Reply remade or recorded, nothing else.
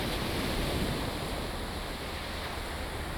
recorded